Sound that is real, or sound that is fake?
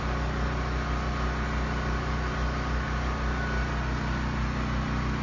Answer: real